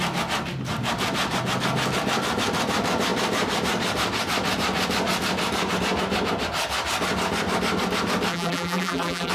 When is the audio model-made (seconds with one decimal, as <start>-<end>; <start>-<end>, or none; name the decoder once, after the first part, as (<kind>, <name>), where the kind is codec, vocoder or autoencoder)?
8.3-9.3 (vocoder, BigVGAN v2)

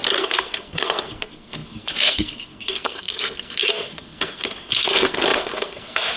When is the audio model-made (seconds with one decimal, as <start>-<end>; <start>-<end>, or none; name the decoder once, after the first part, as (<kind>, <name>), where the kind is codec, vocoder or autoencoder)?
0.0-6.2 (codec, SNAC)

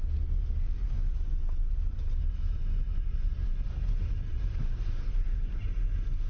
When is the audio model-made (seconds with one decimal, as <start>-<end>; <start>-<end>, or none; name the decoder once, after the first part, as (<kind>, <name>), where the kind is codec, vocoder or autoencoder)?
5.0-5.6 (codec, SNAC)

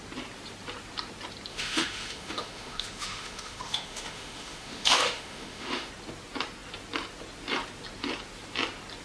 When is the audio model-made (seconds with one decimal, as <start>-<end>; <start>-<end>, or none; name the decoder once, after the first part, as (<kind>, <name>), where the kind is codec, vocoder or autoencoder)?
1.5-5.9 (autoencoder, DAC-VAE)

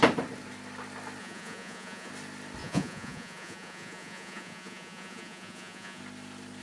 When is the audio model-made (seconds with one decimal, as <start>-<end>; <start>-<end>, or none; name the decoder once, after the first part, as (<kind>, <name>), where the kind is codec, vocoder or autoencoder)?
1.2-2.1 (vocoder, Vocos); 2.6-6.0

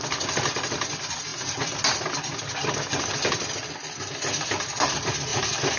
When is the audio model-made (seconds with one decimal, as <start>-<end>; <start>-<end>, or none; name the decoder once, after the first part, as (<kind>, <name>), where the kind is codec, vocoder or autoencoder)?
none

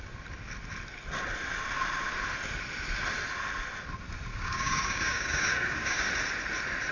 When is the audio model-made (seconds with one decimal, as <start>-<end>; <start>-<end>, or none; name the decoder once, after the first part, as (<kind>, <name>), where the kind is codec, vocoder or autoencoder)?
4.3-6.1 (codec, DAC)